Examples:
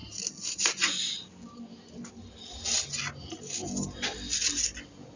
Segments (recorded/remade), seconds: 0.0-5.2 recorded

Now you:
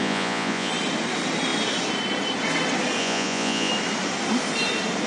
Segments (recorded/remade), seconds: 0.0-0.7 remade; 0.7-3.0 recorded; 3.0-3.7 remade; 3.7-5.1 recorded

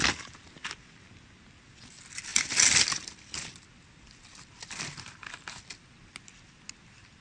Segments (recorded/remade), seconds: 0.0-7.2 recorded

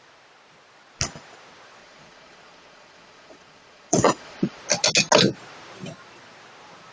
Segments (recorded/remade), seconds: 0.0-1.8 recorded; 1.8-4.6 remade; 4.6-6.9 recorded

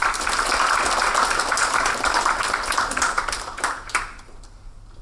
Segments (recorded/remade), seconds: 0.0-1.6 recorded; 1.6-4.6 remade; 4.6-5.0 recorded

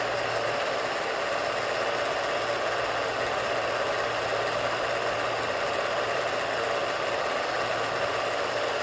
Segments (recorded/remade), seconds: 0.0-8.8 recorded

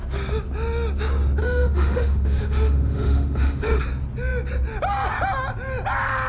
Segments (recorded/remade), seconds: 0.0-1.4 recorded; 1.4-3.8 remade; 3.8-6.3 recorded

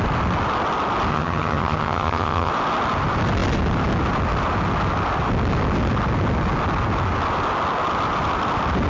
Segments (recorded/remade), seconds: 0.0-1.1 recorded; 1.1-2.5 remade; 2.5-8.9 recorded